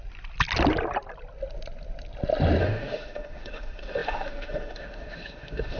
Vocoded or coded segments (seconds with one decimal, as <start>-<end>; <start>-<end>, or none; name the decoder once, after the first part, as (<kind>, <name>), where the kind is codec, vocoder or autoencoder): 2.6-5.8 (autoencoder, DAC-VAE)